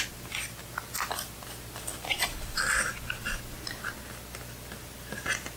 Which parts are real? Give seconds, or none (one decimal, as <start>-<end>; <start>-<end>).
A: 0.0-1.9; 2.6-5.6